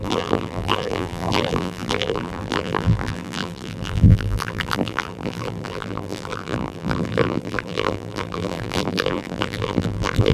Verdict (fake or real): fake